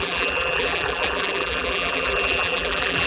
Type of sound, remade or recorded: remade